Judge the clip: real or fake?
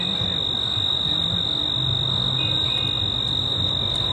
real